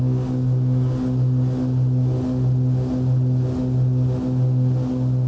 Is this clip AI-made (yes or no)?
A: no